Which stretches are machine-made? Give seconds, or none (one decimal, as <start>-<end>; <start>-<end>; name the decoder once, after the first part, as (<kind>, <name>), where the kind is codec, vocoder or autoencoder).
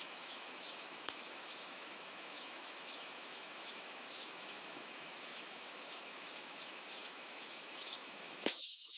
0.0-9.0 (autoencoder, DAC-VAE)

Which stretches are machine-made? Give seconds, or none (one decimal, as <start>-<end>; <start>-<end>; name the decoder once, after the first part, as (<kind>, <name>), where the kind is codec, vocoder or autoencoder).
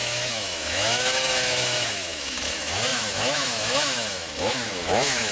0.0-5.3 (autoencoder, DAC-VAE)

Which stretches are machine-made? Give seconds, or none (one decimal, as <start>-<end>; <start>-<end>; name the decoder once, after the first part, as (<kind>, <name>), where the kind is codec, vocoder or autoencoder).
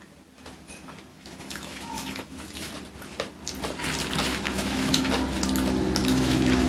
1.1-2.7 (autoencoder, DAC-VAE); 4.3-5.1; 6.0-6.7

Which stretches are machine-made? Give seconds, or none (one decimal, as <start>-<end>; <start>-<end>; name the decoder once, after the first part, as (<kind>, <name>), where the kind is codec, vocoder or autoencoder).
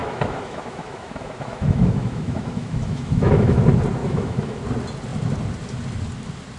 0.0-3.6 (autoencoder, DAC-VAE); 4.0-4.6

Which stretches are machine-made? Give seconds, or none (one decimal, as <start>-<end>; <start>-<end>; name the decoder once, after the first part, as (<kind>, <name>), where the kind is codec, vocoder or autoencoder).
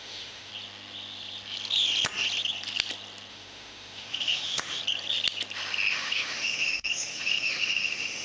0.0-0.5 (autoencoder, DAC-VAE); 3.3-4.8; 5.9-8.2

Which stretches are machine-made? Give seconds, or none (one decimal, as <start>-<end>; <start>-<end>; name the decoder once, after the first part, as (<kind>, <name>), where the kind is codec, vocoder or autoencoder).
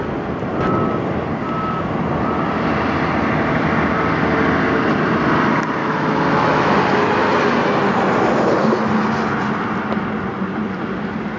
5.8-6.8 (autoencoder, DAC-VAE)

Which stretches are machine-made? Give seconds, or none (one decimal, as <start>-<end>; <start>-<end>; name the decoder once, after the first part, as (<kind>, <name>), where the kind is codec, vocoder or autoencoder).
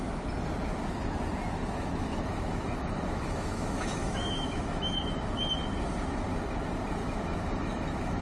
1.6-5.3 (autoencoder, DAC-VAE); 7.0-8.2